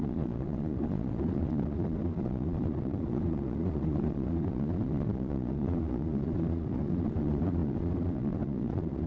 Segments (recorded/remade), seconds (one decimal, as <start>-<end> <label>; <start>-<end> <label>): 0.0-9.1 remade